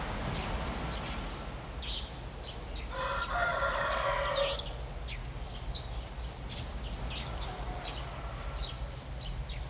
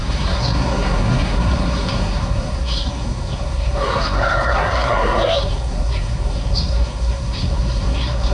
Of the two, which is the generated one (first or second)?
second